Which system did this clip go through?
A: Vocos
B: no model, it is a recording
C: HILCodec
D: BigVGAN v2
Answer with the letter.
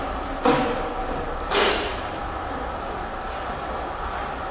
B